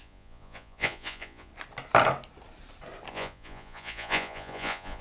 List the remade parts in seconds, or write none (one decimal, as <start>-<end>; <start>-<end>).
0.0-1.5; 3.1-5.0